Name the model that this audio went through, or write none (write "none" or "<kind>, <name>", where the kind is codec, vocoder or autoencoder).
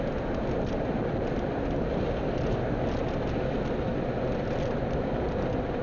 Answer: none